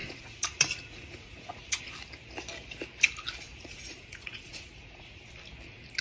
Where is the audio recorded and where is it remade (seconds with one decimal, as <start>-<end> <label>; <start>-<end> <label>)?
0.0-1.8 remade; 1.8-3.5 recorded; 3.5-5.3 remade; 5.3-6.0 recorded